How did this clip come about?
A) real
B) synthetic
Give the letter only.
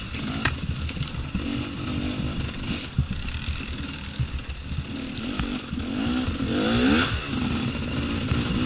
A